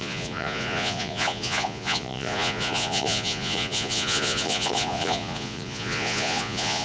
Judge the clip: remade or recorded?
remade